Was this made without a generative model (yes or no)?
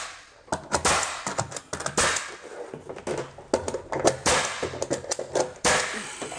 yes